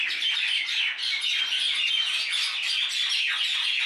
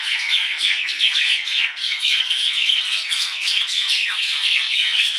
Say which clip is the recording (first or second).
first